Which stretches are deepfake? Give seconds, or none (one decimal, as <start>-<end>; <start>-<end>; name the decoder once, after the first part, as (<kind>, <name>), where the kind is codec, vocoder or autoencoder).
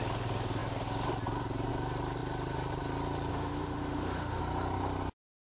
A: 3.3-4.4 (autoencoder, DAC-VAE)